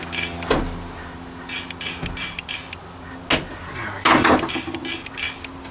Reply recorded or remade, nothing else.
recorded